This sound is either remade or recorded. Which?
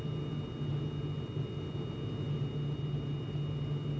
recorded